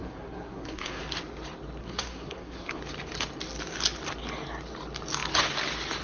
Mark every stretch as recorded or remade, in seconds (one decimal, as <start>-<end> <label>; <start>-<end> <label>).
0.0-1.0 remade; 1.0-1.8 recorded; 1.8-2.8 remade; 2.8-6.0 recorded